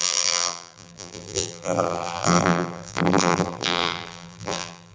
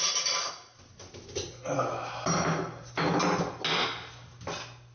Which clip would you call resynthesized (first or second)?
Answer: first